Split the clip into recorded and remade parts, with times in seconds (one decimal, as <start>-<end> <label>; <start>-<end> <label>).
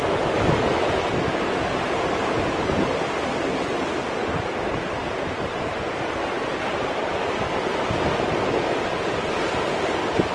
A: 0.0-10.3 recorded